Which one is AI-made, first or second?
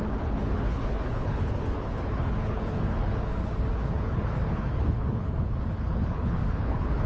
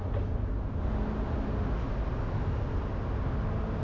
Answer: first